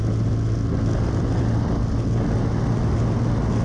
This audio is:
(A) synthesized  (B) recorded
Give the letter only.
B